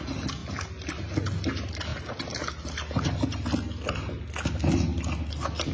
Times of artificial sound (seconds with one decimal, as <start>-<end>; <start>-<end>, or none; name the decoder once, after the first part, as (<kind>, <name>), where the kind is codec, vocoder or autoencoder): none